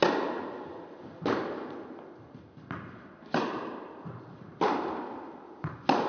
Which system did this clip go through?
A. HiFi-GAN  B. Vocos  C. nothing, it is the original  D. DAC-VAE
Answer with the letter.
C